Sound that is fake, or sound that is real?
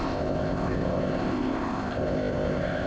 fake